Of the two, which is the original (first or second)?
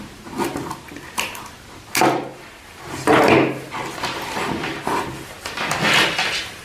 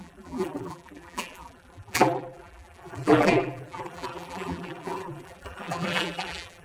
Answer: first